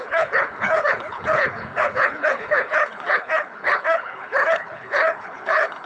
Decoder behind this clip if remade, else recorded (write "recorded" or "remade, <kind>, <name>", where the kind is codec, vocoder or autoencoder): remade, codec, HILCodec